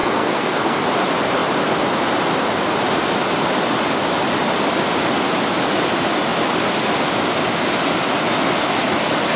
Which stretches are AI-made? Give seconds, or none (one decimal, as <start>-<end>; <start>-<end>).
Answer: 0.0-0.8